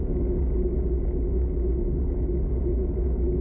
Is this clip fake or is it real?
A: real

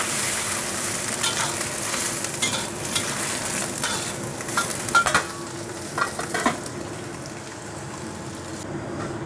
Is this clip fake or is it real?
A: real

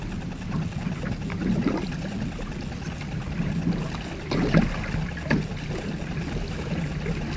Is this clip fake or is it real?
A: real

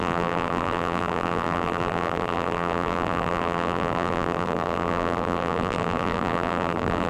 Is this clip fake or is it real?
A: fake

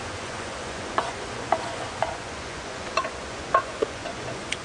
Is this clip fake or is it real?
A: fake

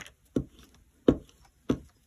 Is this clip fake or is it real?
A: real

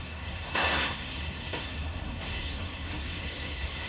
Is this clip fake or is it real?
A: fake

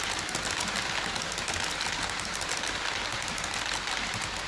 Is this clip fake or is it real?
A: real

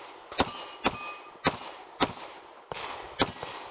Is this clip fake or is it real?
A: real